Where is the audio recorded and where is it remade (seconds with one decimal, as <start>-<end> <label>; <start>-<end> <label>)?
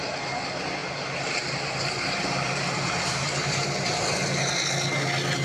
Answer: 0.0-0.8 recorded; 0.8-4.0 remade; 4.0-5.4 recorded